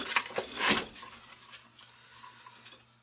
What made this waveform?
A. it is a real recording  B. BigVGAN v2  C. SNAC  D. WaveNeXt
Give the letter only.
A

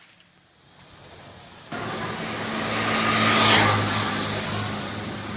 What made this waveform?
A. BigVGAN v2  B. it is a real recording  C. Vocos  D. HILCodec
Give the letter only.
B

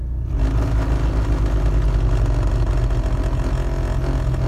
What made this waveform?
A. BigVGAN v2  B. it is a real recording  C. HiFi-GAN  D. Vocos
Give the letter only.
B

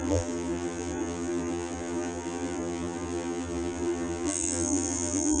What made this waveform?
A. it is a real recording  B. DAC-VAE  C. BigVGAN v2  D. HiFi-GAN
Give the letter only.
C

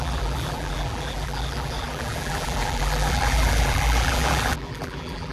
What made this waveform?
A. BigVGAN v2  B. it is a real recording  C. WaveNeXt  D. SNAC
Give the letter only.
A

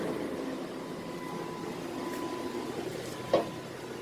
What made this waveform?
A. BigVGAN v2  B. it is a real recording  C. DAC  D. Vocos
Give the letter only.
B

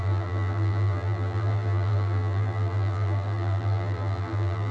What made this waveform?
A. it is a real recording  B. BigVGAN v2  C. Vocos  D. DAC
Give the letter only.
B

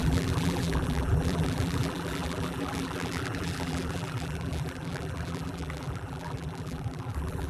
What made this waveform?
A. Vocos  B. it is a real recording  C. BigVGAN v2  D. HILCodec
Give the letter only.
C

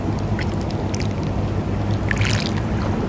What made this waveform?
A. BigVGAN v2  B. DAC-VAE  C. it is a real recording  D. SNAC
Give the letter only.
C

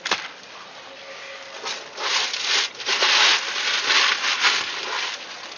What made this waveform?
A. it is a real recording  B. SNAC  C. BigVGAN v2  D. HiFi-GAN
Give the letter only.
A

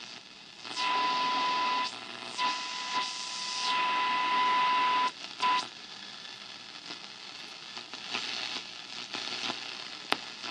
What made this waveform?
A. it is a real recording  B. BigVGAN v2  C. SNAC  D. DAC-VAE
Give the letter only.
A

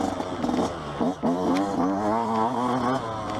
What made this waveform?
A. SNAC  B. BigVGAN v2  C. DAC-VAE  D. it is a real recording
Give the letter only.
D